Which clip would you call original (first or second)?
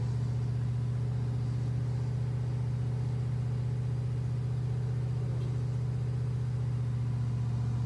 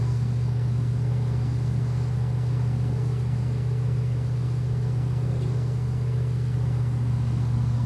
first